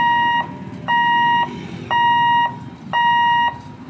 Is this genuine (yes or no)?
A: yes